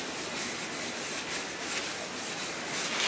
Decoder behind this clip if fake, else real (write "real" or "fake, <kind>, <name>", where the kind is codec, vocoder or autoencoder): real